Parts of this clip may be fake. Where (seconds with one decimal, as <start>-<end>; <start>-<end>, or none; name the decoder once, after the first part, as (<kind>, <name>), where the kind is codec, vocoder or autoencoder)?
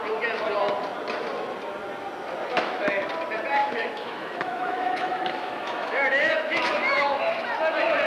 2.5-3.1 (autoencoder, DAC-VAE); 3.6-7.2